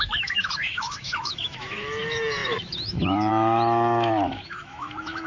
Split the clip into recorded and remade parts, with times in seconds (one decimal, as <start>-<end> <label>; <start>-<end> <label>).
0.0-5.3 remade